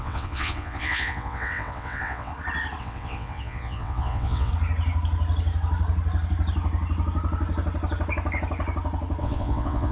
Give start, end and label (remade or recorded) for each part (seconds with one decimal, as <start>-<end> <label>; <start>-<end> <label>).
0.0-2.3 remade; 2.3-2.8 recorded; 2.8-4.5 remade; 4.5-9.2 recorded; 9.2-9.9 remade